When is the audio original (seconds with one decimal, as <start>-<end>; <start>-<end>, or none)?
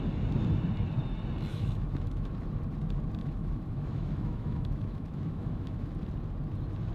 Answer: 0.0-1.5; 2.3-3.2; 5.9-6.9